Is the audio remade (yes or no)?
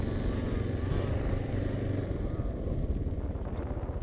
no